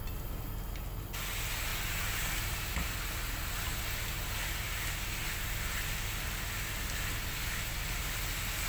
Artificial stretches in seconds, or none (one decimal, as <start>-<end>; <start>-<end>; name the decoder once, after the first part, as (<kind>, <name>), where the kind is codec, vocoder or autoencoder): none